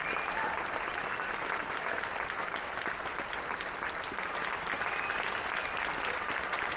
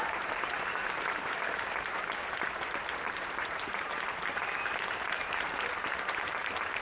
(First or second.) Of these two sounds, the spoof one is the second